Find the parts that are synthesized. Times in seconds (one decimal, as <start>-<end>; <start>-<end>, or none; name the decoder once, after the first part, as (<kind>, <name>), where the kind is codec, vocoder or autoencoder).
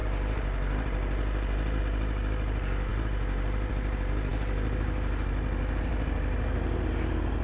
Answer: none